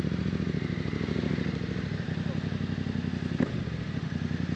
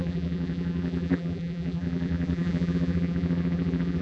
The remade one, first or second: second